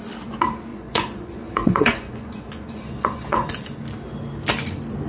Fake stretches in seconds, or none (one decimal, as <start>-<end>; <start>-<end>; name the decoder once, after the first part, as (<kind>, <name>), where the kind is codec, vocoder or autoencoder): 0.7-3.8 (vocoder, Vocos)

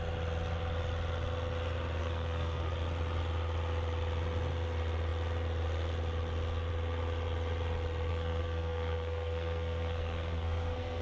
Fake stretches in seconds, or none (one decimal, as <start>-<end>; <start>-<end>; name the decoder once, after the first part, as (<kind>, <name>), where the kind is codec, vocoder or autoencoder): 2.0-2.7 (codec, SNAC); 8.1-11.0

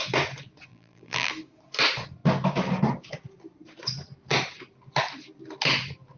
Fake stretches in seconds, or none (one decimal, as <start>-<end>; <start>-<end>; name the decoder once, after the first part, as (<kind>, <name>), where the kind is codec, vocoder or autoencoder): 0.7-1.3 (vocoder, BigVGAN v2)

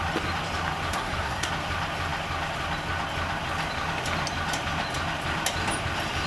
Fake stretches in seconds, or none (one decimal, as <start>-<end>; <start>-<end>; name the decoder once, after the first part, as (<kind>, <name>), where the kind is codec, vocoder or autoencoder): 0.9-1.5 (codec, SNAC)

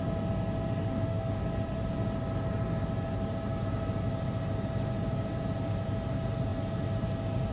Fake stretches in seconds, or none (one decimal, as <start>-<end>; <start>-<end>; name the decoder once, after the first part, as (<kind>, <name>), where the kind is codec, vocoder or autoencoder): 0.8-1.4 (autoencoder, DAC-VAE)

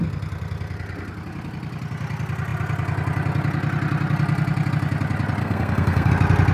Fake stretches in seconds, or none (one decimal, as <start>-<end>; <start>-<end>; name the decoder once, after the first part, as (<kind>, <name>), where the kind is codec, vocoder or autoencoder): 5.4-6.1 (codec, SNAC)

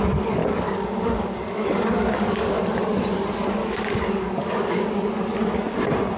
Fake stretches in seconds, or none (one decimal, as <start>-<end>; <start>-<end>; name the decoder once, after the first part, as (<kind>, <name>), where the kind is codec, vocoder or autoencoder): 0.4-2.6 (codec, DAC); 3.6-5.0